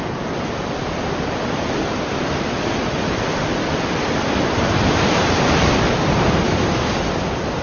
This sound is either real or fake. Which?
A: fake